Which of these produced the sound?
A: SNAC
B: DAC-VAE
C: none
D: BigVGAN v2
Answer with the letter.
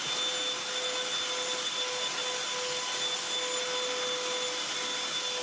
C